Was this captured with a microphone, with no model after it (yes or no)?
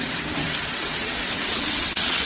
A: no